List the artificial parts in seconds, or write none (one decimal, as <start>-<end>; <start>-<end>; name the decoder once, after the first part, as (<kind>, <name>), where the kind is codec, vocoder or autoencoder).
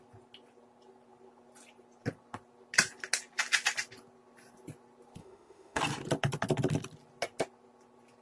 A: 5.2-5.8 (autoencoder, DAC-VAE)